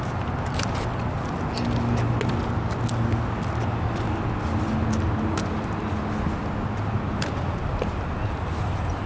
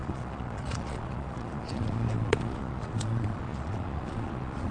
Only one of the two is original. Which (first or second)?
first